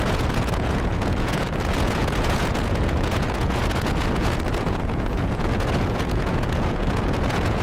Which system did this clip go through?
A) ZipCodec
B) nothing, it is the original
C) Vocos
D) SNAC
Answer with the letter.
C